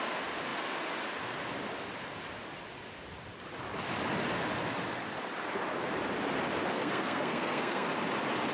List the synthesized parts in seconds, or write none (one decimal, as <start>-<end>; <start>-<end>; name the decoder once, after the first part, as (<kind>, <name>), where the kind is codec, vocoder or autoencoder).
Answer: 6.7-7.9 (codec, SNAC)